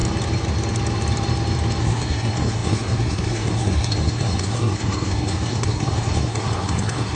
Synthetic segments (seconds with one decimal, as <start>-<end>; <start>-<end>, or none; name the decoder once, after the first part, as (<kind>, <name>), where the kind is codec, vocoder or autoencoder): 1.8-7.2 (codec, SNAC)